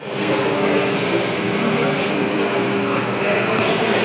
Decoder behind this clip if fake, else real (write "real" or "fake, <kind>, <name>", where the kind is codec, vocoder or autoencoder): fake, codec, SNAC